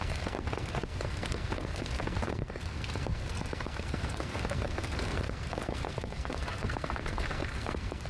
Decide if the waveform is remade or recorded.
remade